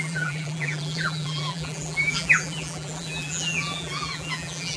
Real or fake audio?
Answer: fake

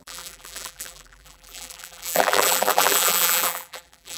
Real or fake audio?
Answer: fake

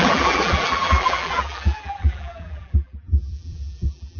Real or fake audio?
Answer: fake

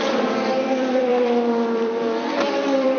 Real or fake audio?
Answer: fake